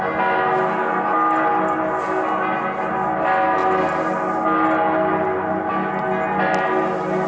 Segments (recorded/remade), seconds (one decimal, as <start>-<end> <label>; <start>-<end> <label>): 0.0-7.3 recorded